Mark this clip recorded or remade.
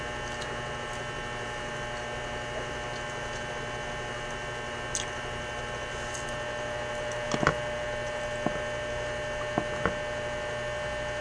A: recorded